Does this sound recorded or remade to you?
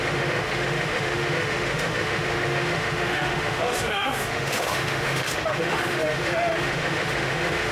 remade